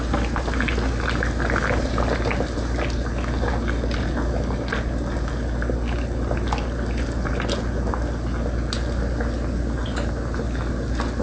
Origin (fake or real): real